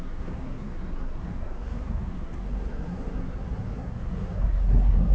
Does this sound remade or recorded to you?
remade